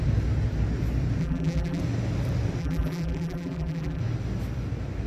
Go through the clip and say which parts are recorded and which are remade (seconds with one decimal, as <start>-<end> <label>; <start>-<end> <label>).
0.0-1.2 recorded; 1.2-1.8 remade; 1.8-2.6 recorded; 2.6-4.0 remade; 4.0-5.1 recorded